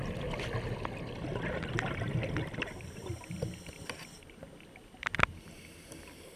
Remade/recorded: recorded